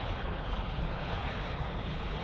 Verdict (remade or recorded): remade